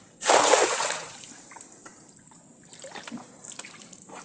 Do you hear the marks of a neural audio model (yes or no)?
yes